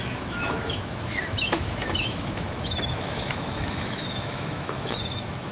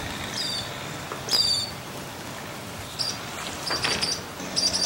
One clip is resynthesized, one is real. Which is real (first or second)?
second